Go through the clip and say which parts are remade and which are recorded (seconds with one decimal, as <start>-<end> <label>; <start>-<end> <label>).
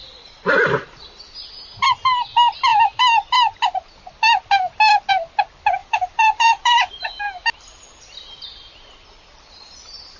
0.0-1.2 remade; 1.2-5.8 recorded; 5.8-7.2 remade; 7.2-10.2 recorded